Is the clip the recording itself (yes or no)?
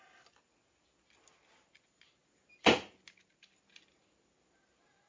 yes